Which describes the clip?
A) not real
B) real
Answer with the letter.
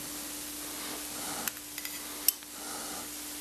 B